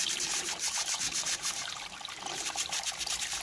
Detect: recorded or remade remade